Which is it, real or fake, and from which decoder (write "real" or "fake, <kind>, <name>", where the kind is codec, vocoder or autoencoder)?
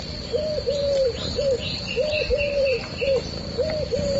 fake, vocoder, BigVGAN v2